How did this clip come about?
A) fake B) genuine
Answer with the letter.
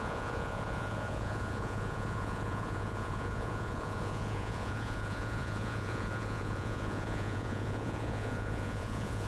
A